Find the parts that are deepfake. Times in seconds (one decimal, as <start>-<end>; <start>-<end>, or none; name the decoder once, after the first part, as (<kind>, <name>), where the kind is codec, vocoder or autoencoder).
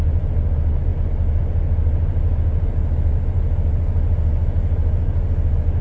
none